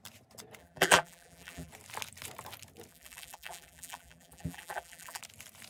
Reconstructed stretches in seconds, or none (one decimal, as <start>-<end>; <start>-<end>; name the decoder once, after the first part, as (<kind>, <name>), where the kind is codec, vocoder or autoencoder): 0.6-1.7 (vocoder, BigVGAN v2); 2.9-5.2